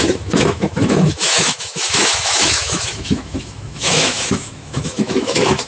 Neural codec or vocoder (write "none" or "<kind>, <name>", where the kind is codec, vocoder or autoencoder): autoencoder, DAC-VAE